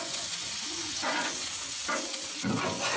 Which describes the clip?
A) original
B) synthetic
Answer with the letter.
B